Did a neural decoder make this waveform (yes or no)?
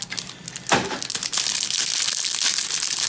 no